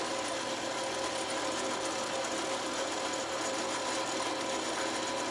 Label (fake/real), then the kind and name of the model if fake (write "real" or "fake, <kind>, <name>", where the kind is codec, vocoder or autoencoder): real